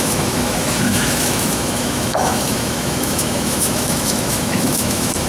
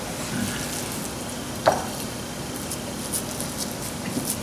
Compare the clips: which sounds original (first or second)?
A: second